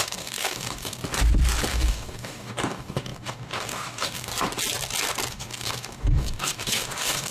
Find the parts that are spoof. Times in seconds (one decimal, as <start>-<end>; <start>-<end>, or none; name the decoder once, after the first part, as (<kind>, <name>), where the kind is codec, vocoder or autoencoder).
0.0-1.0 (codec, DAC); 1.7-4.3; 5.3-7.3